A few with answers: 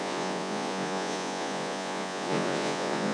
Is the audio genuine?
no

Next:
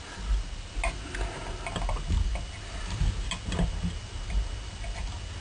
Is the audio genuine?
yes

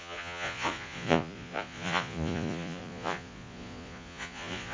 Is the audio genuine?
no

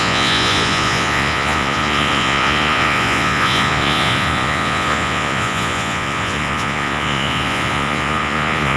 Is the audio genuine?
no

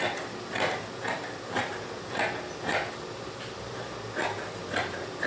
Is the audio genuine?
yes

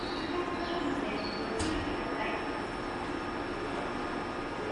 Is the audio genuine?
yes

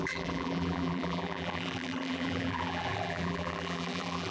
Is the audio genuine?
no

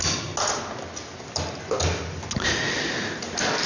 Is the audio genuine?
yes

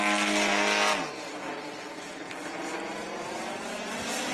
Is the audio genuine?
yes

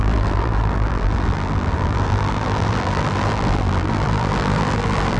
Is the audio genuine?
no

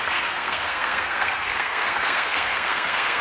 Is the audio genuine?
no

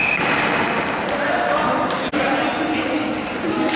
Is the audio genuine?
yes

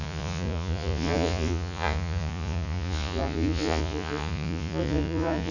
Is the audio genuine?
no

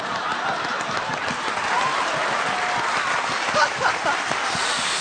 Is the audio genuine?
yes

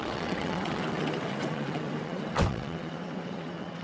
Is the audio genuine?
no